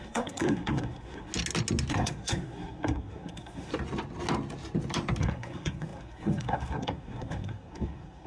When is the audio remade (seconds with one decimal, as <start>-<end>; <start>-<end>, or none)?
0.0-1.3; 1.9-3.7; 5.2-8.3